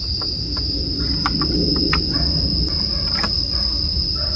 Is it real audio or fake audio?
real